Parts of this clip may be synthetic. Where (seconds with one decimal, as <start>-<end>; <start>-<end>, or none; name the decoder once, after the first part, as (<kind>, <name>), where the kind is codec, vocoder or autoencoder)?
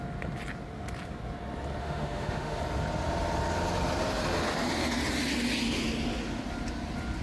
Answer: 1.8-2.6 (autoencoder, DAC-VAE)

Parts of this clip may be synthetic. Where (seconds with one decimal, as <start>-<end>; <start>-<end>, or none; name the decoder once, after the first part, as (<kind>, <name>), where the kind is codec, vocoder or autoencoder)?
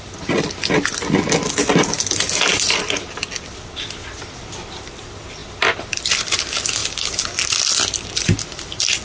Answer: none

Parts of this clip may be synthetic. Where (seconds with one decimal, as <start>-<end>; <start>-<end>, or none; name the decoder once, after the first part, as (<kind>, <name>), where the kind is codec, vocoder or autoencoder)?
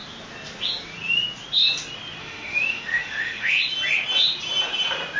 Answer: 2.2-3.6 (autoencoder, DAC-VAE)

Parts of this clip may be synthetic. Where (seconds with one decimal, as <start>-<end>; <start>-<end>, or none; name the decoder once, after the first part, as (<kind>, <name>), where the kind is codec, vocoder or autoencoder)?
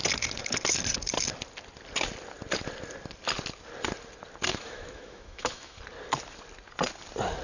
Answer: 4.5-5.8 (autoencoder, DAC-VAE)